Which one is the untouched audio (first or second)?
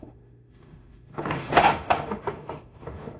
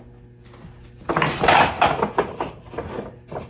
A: second